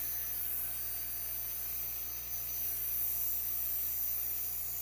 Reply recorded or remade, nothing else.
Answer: recorded